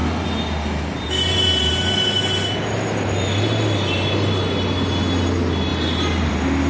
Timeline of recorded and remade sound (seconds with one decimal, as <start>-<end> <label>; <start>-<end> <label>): 0.0-6.7 recorded